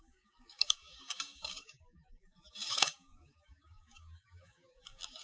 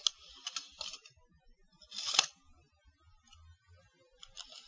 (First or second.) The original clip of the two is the second